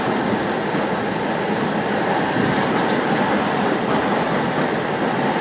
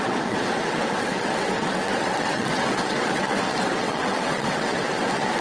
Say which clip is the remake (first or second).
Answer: second